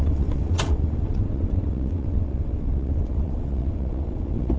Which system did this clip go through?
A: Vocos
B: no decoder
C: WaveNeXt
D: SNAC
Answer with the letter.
C